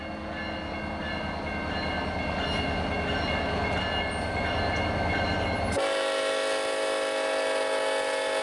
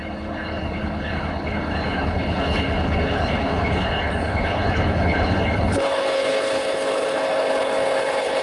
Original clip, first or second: first